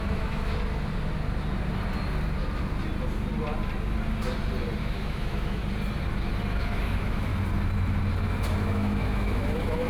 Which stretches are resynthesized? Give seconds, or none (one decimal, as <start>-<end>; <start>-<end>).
0.0-0.5; 4.8-5.6; 6.5-7.3; 8.6-9.9